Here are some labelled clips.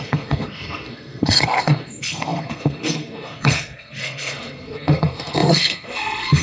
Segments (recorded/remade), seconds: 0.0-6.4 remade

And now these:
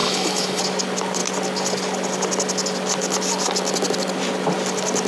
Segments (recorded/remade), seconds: 0.0-0.6 remade; 0.6-5.1 recorded

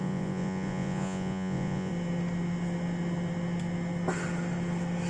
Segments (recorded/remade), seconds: 0.0-1.9 remade; 1.9-5.1 recorded

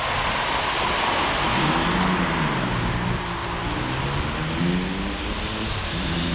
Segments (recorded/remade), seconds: 0.0-6.3 recorded

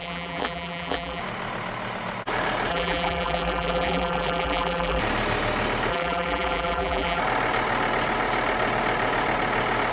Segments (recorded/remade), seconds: 0.0-1.2 remade; 1.2-2.7 recorded; 2.7-5.0 remade; 5.0-5.9 recorded; 5.9-7.2 remade; 7.2-9.9 recorded